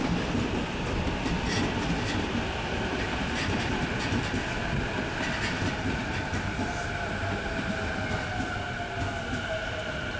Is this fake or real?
real